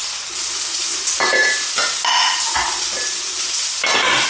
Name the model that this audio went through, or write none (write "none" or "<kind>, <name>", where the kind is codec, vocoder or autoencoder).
none